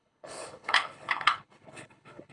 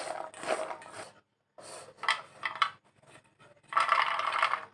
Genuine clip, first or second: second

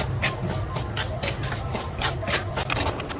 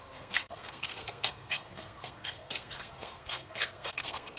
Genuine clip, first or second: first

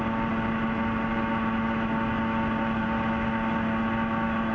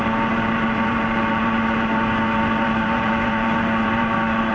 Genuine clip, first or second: first